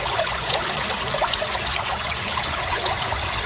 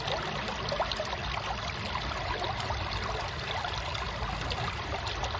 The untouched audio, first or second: second